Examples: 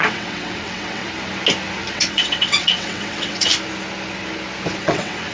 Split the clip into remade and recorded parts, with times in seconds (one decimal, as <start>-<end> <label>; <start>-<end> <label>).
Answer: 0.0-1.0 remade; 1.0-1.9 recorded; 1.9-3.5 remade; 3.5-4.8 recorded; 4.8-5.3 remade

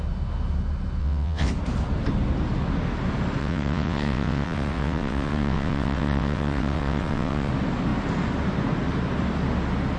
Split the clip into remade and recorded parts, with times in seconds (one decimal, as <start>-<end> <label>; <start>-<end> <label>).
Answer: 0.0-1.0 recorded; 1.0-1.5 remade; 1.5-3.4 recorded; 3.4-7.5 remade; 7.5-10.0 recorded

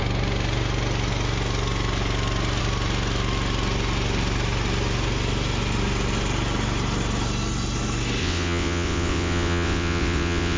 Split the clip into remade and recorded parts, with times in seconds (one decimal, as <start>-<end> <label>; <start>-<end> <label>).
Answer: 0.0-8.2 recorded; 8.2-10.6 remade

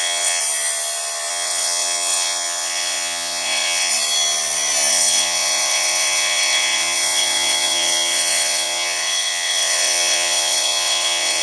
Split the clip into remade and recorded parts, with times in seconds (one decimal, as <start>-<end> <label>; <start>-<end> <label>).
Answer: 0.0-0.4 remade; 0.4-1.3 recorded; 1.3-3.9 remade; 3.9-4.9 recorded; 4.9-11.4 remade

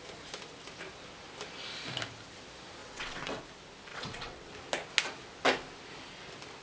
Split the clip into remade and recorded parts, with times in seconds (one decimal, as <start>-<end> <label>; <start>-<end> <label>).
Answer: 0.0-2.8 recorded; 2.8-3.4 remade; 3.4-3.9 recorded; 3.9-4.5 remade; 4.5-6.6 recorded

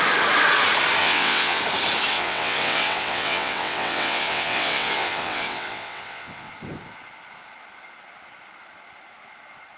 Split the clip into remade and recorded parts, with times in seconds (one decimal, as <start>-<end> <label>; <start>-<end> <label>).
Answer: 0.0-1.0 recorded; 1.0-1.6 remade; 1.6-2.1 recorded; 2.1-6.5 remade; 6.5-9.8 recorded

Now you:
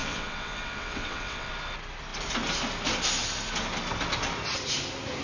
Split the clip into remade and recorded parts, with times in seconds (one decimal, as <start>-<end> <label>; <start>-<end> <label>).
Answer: 0.0-1.5 remade; 1.5-5.2 recorded

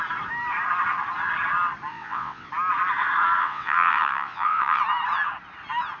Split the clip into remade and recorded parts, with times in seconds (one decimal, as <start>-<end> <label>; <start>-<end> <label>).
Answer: 0.0-1.9 recorded; 1.9-2.5 remade; 2.5-3.4 recorded; 3.4-4.8 remade; 4.8-6.0 recorded